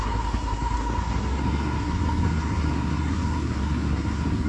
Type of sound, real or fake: fake